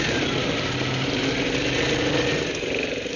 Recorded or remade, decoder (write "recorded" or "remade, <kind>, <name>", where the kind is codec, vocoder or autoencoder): recorded